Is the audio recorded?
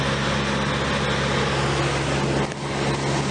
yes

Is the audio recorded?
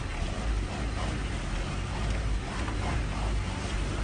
yes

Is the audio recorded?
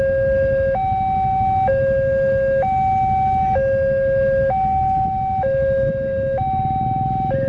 yes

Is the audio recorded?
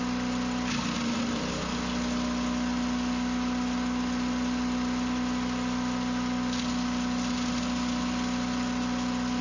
yes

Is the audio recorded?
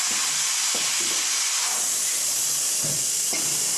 yes